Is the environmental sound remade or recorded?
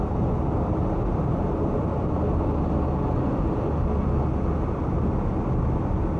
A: recorded